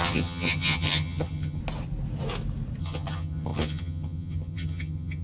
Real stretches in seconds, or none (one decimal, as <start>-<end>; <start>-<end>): 1.6-2.8